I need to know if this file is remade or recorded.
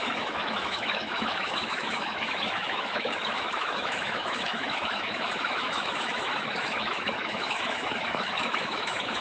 remade